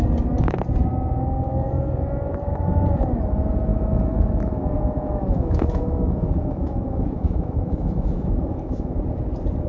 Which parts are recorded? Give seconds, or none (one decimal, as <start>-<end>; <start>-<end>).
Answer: 0.0-3.7; 9.0-9.7